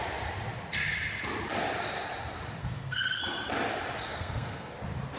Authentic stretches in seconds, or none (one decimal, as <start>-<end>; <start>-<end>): 0.0-2.6; 3.2-4.1; 4.7-5.2